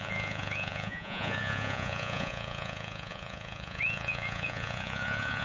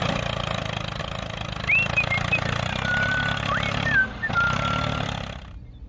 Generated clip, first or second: first